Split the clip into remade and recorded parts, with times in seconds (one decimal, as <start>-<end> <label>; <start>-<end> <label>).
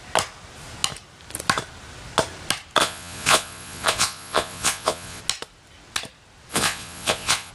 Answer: 0.0-2.8 recorded; 2.8-5.2 remade; 5.2-6.5 recorded; 6.5-7.5 remade